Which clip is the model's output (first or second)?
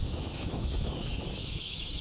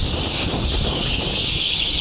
first